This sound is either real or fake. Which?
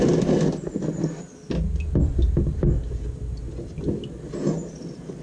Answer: real